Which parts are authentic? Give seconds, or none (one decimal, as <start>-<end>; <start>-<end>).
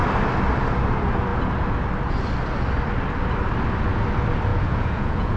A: 0.0-4.5